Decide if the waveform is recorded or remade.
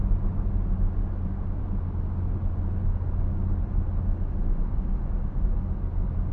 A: recorded